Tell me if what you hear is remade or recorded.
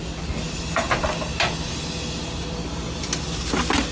recorded